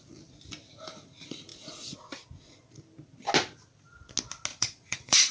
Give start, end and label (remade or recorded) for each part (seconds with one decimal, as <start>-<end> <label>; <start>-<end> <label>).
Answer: 0.0-4.5 recorded; 4.5-5.3 remade